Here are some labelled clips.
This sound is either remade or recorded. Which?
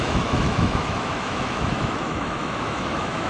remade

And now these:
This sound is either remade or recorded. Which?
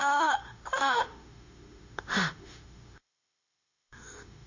remade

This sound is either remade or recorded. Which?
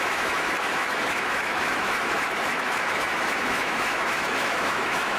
remade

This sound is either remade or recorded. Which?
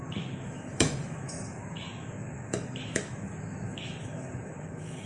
remade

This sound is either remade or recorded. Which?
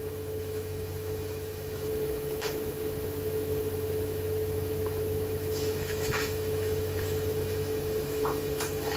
remade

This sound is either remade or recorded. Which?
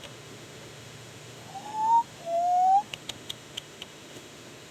remade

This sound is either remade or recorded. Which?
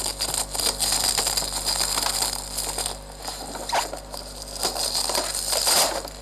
recorded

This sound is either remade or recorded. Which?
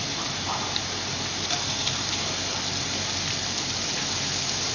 recorded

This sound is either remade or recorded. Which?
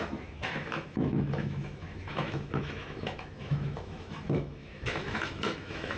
remade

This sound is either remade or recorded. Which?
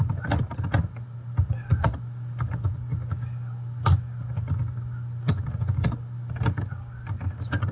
recorded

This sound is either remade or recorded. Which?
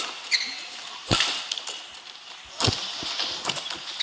recorded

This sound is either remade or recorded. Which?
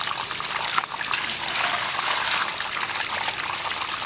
recorded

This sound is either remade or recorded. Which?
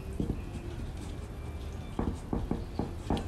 recorded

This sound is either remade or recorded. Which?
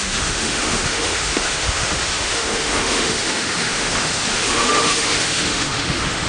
remade